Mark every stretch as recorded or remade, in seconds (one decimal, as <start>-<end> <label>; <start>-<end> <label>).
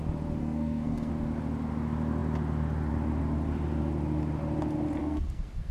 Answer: 0.0-0.4 recorded; 0.4-1.1 remade; 1.1-5.0 recorded; 5.0-5.7 remade